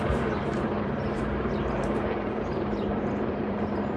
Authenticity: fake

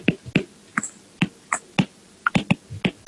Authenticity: real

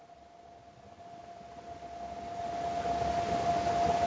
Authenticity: real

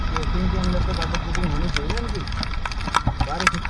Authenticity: real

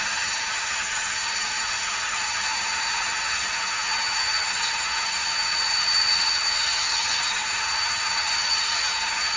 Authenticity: fake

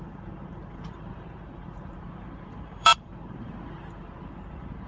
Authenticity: fake